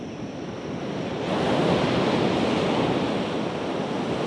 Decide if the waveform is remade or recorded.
recorded